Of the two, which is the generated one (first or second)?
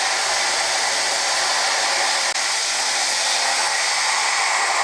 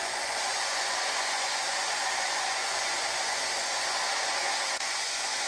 second